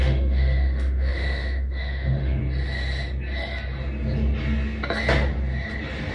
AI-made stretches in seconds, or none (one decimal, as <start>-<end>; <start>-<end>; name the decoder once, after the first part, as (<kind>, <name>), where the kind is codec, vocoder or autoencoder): 0.0-2.4 (autoencoder, DAC-VAE)